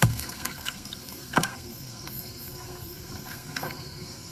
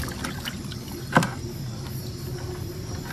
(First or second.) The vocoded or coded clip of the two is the first